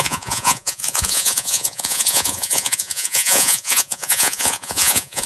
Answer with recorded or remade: remade